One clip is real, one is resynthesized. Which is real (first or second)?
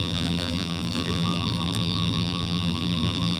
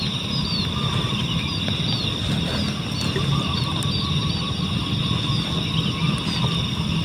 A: second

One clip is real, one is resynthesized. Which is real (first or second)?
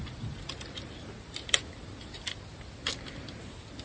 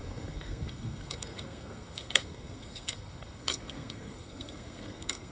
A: first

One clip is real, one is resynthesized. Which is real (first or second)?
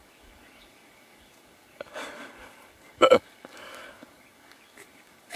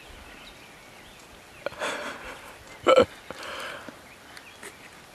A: second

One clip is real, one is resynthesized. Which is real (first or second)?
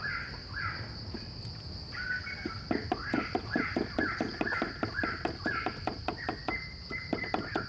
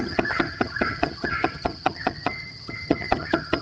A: first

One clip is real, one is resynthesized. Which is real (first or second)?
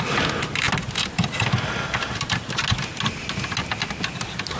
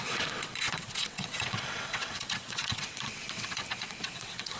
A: first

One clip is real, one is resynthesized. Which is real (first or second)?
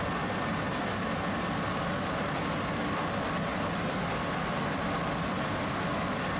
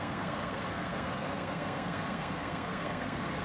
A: first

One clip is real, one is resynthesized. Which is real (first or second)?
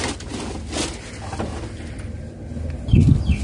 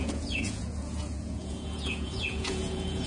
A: first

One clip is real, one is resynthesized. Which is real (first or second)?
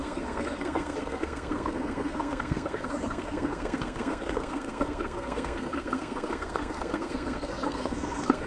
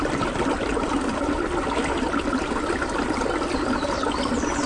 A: second